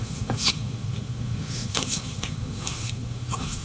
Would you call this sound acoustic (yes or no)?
no